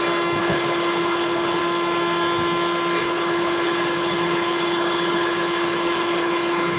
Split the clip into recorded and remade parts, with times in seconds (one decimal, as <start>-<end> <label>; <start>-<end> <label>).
0.0-0.4 recorded; 0.4-1.6 remade; 1.6-3.0 recorded; 3.0-6.8 remade